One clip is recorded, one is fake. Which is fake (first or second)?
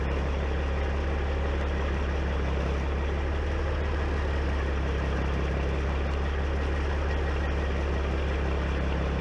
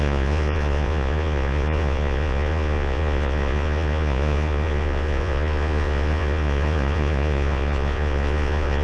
second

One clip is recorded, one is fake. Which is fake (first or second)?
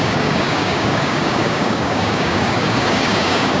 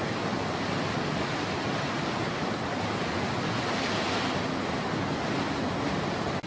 first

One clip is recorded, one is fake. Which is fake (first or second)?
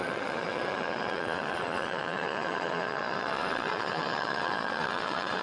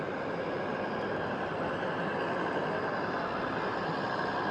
first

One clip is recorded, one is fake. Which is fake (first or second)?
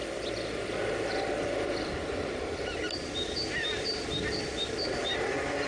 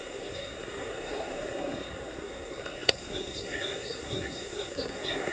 second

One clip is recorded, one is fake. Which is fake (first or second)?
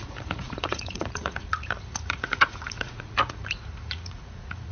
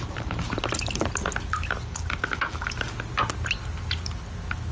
first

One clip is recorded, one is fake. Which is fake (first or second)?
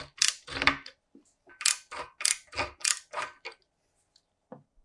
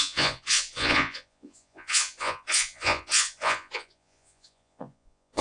second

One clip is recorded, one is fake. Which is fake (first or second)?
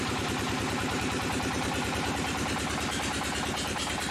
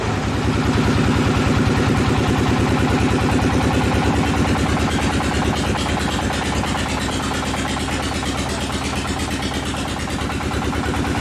first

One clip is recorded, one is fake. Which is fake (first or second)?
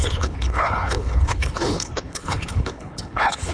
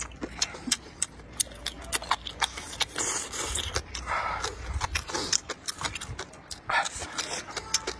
first